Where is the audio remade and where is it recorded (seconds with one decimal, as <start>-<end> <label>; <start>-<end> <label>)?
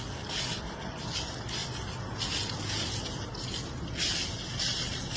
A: 0.0-5.2 recorded